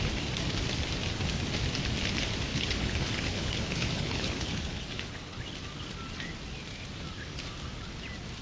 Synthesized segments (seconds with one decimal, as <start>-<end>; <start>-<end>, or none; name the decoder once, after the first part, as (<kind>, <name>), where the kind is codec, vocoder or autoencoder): 2.5-5.4 (codec, HILCodec)